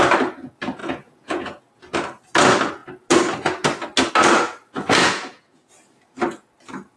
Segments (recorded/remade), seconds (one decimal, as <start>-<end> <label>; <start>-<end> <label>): 0.0-0.8 recorded; 0.8-1.6 remade; 1.6-5.0 recorded; 5.0-5.7 remade; 5.7-7.0 recorded